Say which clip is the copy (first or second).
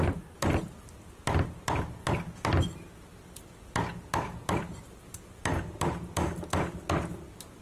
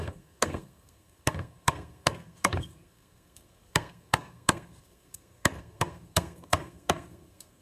second